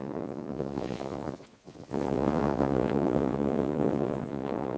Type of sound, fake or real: fake